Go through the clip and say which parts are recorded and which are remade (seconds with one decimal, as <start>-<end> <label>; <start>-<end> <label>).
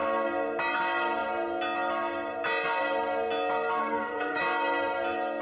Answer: 0.0-3.8 recorded; 3.8-4.4 remade; 4.4-5.4 recorded